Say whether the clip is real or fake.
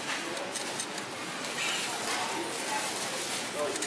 real